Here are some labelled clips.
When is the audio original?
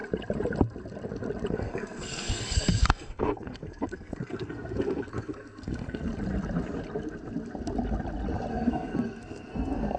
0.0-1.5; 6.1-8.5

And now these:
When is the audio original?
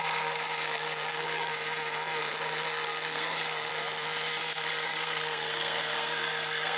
1.5-2.2; 3.7-4.4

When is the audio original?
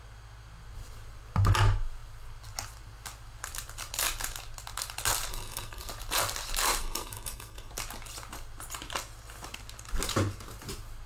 0.0-5.3; 5.9-6.8; 7.7-11.1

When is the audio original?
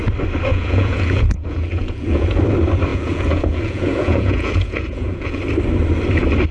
0.0-0.5; 2.4-2.9; 5.4-6.5